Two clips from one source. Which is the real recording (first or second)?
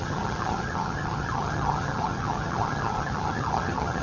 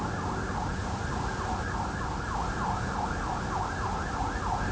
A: second